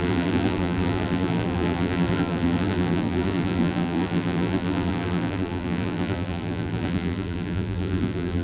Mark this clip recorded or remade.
remade